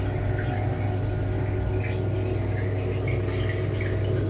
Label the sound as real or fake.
real